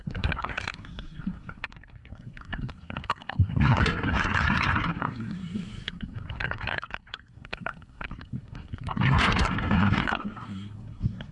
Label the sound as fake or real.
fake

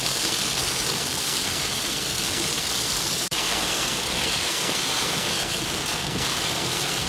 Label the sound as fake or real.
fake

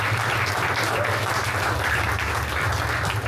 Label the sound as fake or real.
real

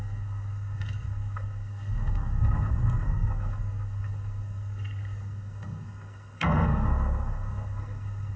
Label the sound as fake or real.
fake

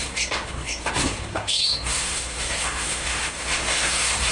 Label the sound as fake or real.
fake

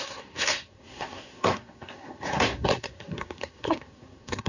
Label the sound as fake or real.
fake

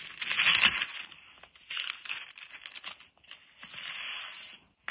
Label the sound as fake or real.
real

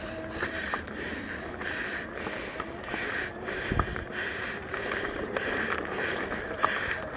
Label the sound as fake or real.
real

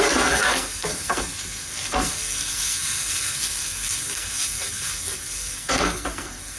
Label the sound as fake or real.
fake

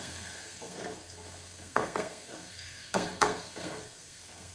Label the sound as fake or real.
fake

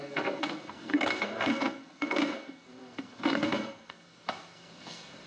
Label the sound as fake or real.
fake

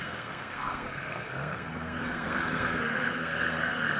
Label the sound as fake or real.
fake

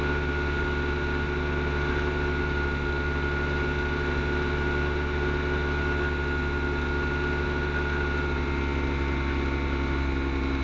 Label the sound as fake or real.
real